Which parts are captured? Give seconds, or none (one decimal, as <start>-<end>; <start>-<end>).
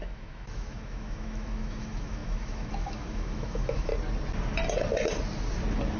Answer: 3.9-6.0